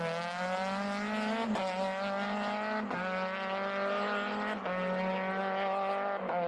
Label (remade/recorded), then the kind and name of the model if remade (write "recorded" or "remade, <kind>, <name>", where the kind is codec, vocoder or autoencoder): recorded